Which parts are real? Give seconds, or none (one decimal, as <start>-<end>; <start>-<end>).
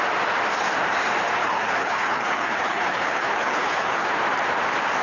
0.0-1.4; 4.1-5.0